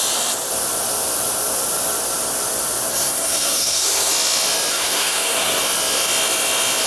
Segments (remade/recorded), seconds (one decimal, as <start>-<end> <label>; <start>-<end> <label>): 0.0-2.9 recorded; 2.9-4.1 remade; 4.1-4.7 recorded; 4.7-5.6 remade; 5.6-6.9 recorded